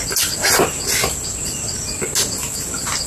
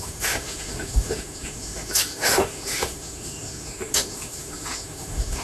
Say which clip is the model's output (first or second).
second